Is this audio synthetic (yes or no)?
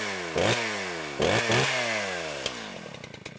no